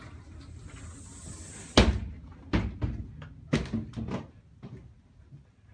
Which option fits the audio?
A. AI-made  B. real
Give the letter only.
B